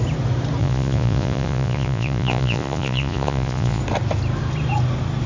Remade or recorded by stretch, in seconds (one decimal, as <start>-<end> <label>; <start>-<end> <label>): 0.0-0.6 recorded; 0.6-3.8 remade; 3.8-5.3 recorded